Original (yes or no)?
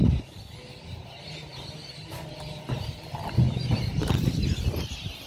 yes